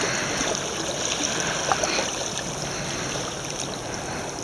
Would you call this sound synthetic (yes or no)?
no